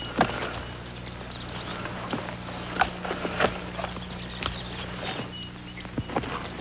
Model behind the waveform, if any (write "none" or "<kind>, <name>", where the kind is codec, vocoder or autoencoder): none